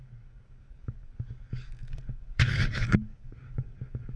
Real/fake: fake